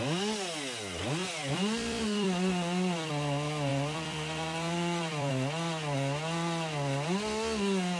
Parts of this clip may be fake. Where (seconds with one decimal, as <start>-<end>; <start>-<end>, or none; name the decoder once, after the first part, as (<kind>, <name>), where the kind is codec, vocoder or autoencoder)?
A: 1.2-3.1 (vocoder, BigVGAN v2); 3.7-5.3